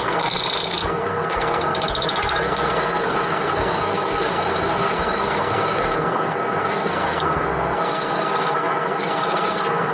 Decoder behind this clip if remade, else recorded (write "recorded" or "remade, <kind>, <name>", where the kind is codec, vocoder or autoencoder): remade, codec, SNAC